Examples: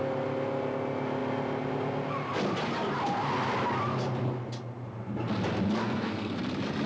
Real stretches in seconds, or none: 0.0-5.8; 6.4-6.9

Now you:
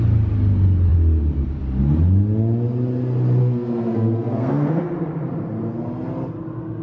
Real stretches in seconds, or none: 0.0-3.4; 4.8-6.8

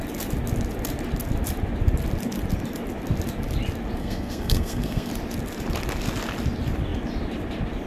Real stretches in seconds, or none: 0.0-4.0; 5.1-7.9

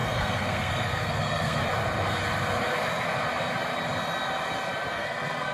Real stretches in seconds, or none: 1.6-4.9

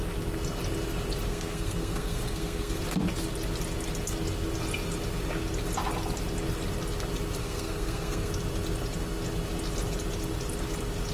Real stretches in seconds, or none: 0.0-1.3; 2.8-7.4; 8.3-11.1

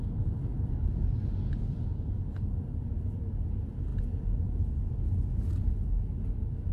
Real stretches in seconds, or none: 0.0-6.7